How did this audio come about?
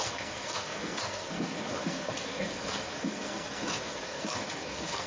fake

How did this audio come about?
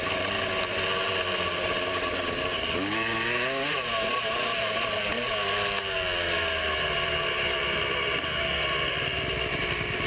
real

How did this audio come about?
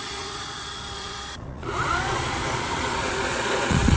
fake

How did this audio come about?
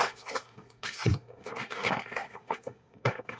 fake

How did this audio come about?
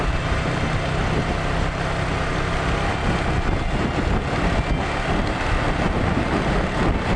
real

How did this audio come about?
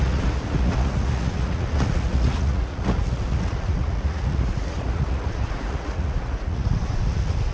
fake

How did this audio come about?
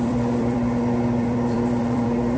fake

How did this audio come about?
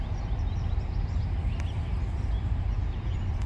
real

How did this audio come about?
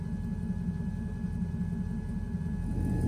real